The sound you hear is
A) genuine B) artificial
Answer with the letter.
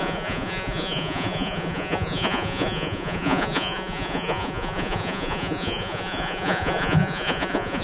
B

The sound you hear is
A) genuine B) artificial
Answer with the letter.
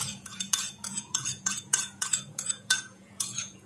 B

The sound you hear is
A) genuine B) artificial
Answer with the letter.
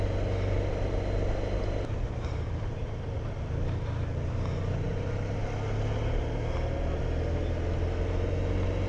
A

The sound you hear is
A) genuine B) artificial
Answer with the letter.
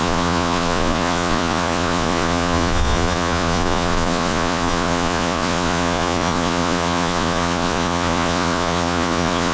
B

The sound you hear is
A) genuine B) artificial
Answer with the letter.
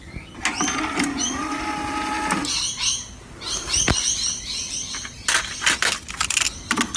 A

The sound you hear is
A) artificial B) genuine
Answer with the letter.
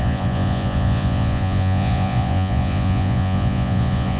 A